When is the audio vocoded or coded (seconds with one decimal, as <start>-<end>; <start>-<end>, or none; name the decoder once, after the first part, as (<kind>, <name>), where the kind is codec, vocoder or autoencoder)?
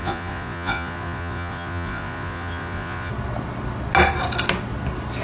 0.0-3.1 (vocoder, Vocos)